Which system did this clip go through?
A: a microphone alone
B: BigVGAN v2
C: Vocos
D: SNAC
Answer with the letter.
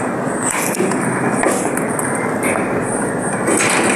A